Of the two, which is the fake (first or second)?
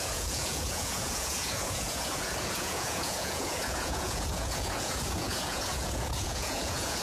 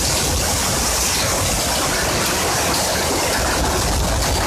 first